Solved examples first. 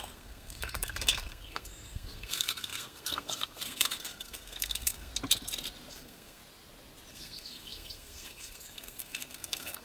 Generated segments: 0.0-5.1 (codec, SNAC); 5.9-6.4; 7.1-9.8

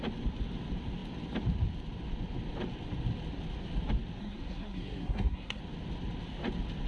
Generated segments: 4.2-5.6 (codec, SNAC)

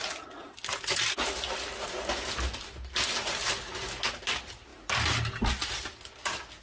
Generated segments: none

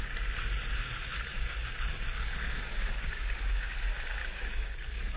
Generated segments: 1.3-3.7 (codec, DAC); 4.2-5.2